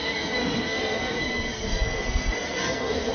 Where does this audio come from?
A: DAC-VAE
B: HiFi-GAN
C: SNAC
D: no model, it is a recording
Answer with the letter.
C